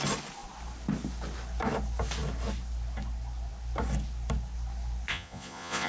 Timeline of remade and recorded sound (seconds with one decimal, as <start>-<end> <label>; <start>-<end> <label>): 0.0-5.1 recorded; 5.1-5.9 remade